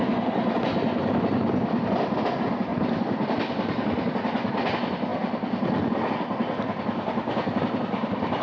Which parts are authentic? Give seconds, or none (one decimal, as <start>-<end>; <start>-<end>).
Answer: 0.0-2.7; 4.1-8.4